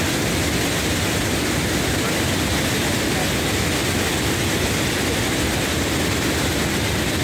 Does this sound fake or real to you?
real